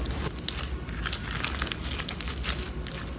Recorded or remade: recorded